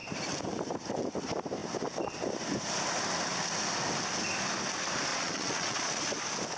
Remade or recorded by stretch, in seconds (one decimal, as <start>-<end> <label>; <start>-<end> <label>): 0.0-5.1 recorded; 5.1-6.0 remade; 6.0-6.6 recorded